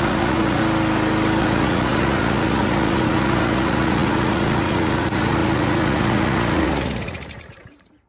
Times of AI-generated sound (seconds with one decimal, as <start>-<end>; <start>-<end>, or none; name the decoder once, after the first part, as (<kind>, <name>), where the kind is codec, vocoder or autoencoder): 0.0-0.6 (vocoder, Vocos); 1.4-8.1